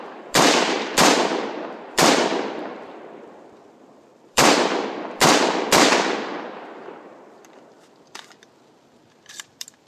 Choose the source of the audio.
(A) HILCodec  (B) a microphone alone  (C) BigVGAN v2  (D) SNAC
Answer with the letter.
C